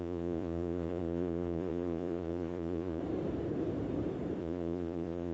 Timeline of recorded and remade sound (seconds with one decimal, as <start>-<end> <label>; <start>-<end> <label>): 0.0-3.0 remade; 3.0-4.4 recorded; 4.4-5.3 remade